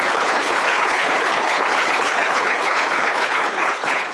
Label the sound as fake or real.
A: fake